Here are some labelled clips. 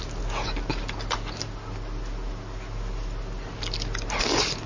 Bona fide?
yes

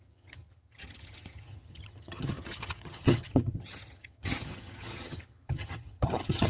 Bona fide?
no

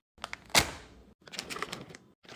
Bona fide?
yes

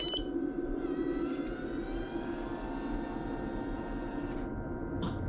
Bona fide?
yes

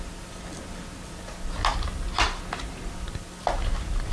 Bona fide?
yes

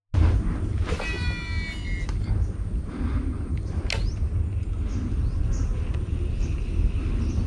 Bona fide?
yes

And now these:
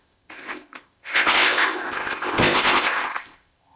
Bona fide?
no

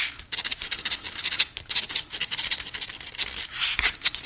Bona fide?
yes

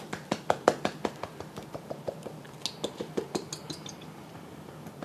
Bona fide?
yes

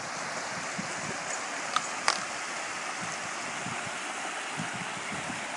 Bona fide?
yes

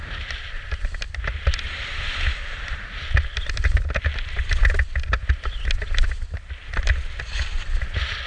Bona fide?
yes